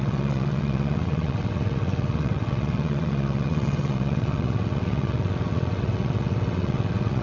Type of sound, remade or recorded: remade